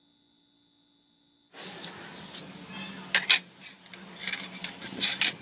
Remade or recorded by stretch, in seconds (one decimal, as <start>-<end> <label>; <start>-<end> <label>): 0.0-4.2 recorded; 4.2-5.4 remade